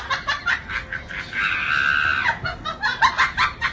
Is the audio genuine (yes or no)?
yes